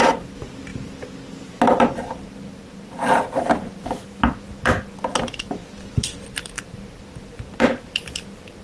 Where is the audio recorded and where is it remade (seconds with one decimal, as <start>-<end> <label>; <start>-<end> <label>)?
0.0-5.6 recorded; 5.6-6.6 remade; 6.6-8.6 recorded